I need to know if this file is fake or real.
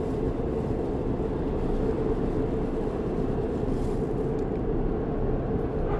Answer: real